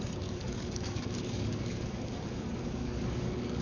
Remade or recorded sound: remade